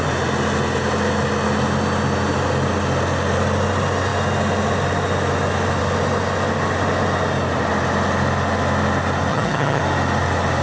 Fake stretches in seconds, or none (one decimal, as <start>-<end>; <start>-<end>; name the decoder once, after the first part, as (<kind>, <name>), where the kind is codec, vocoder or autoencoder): 9.3-9.8 (vocoder, HiFi-GAN)